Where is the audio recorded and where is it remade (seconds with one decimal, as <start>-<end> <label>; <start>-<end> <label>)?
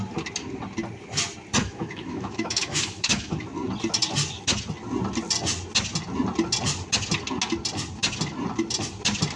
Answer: 0.0-1.6 recorded; 1.6-3.3 remade; 3.3-9.4 recorded